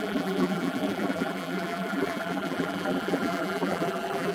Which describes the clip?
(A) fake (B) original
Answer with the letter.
A